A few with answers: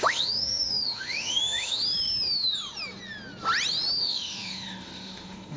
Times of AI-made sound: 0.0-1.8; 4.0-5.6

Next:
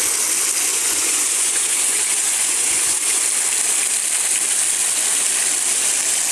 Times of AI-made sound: 0.7-3.2

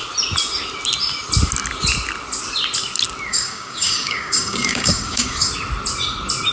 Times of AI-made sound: 3.3-5.5

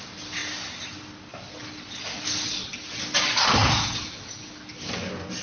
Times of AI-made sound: 3.6-4.5